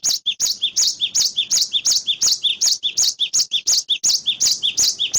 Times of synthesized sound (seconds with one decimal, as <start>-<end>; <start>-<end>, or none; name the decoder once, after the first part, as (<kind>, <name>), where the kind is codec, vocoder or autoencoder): 0.9-1.8 (vocoder, BigVGAN v2); 2.5-3.4